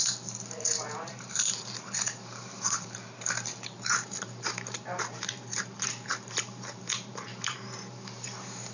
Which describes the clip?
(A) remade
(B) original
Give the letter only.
A